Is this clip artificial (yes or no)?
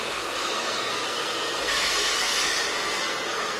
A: yes